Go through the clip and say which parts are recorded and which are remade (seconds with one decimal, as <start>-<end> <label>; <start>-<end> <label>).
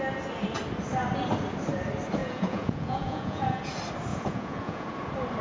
0.0-2.2 recorded; 2.2-3.6 remade; 3.6-4.1 recorded; 4.1-4.9 remade; 4.9-5.4 recorded